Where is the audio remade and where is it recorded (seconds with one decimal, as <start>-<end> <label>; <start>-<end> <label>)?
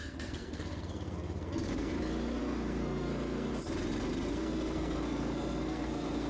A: 0.0-1.9 remade; 1.9-2.4 recorded; 2.4-3.5 remade; 3.5-4.3 recorded; 4.3-6.3 remade